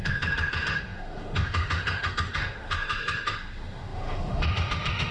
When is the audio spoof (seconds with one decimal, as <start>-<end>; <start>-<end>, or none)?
0.0-5.1